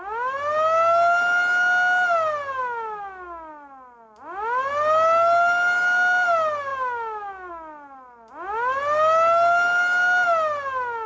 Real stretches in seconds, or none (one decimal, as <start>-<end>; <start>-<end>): 0.0-11.1